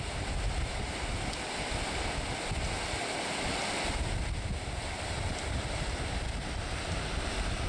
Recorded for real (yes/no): yes